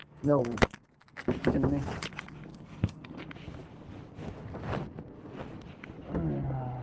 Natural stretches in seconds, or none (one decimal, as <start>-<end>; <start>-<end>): 0.8-2.5; 3.2-6.8